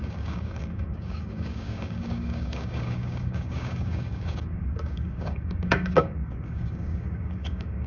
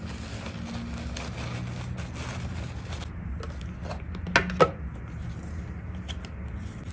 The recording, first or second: second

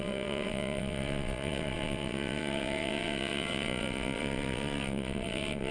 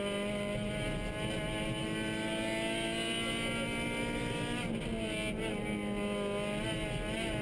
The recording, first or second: second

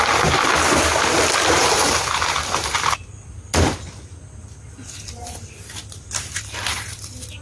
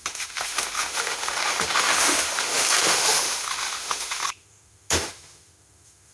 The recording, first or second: first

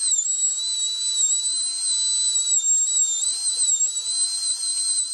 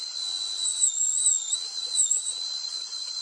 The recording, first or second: first